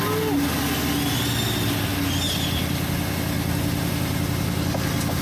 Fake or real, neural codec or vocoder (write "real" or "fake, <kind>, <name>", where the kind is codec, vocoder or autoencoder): real